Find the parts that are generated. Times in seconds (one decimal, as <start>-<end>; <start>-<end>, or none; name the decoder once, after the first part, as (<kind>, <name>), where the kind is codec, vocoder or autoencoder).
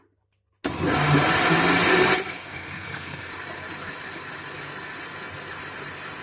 2.4-3.3 (codec, SNAC)